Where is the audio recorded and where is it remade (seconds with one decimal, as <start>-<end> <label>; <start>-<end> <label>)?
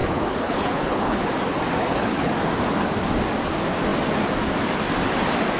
0.0-1.3 remade; 1.3-1.8 recorded; 1.8-2.3 remade; 2.3-5.6 recorded